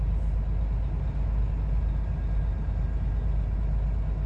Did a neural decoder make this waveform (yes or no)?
no